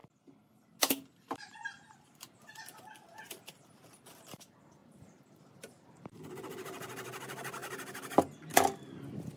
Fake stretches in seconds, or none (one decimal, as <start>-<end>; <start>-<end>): none